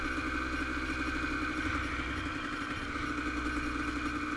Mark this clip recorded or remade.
recorded